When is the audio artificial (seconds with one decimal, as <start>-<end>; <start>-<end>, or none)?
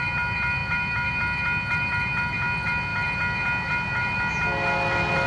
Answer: none